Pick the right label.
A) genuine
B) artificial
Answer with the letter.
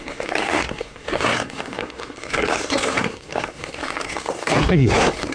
B